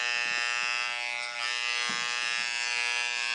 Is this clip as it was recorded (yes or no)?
yes